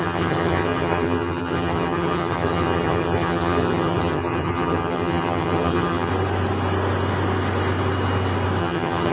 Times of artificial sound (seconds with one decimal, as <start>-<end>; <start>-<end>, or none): 0.0-6.1; 8.6-9.1